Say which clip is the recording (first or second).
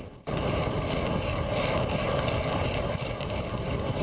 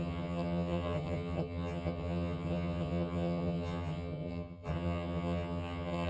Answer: first